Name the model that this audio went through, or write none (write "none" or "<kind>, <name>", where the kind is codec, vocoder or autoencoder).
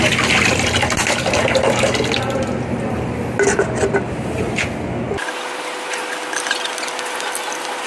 none